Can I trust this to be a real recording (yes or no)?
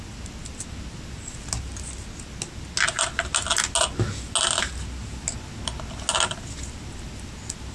yes